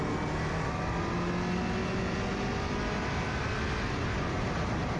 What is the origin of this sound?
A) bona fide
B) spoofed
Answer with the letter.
A